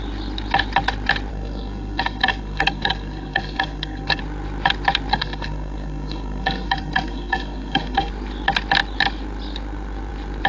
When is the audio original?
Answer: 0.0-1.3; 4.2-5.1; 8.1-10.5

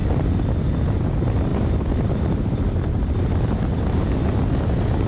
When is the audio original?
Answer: 0.0-1.5; 2.2-5.1

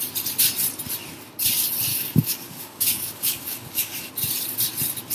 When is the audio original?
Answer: 0.0-1.9; 4.1-5.1